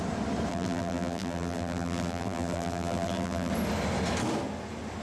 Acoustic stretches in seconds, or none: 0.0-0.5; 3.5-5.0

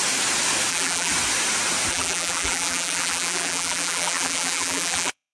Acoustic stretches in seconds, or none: 0.0-0.7; 1.1-1.9